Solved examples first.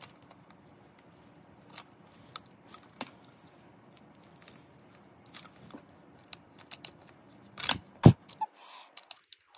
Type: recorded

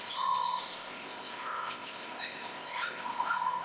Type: remade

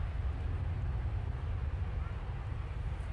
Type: recorded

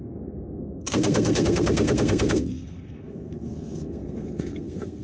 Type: remade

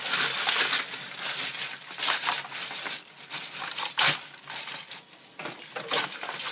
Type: recorded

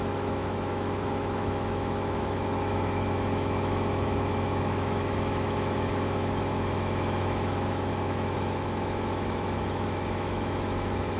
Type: remade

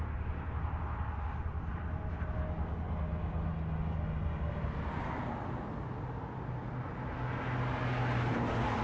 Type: recorded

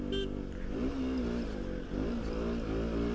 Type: recorded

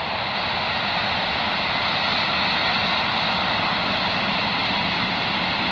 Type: recorded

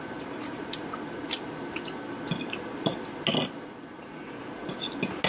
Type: recorded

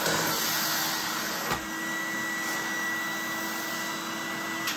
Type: recorded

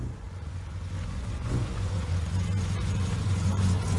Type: remade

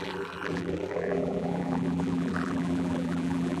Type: remade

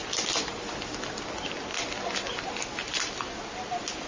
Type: recorded